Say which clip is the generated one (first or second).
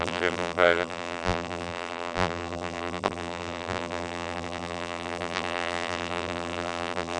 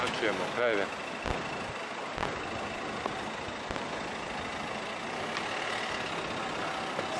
first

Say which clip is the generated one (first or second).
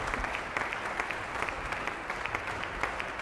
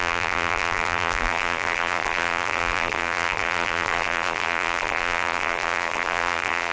second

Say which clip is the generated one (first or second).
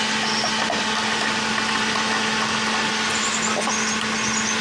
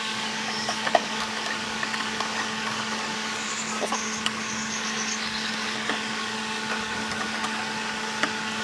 second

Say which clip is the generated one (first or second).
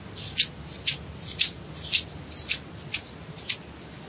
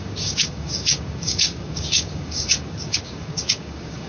second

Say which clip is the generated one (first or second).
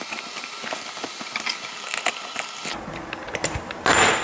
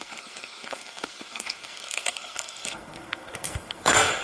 second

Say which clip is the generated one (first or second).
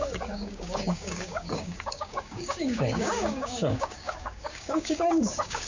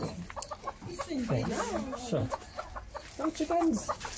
first